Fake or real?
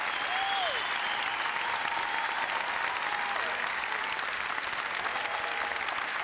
real